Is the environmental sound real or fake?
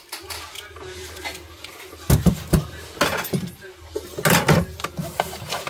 real